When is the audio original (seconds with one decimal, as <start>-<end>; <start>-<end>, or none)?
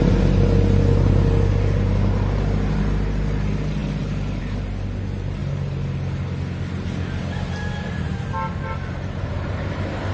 0.0-10.1